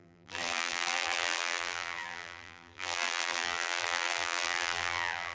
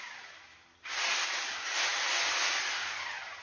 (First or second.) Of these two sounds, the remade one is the first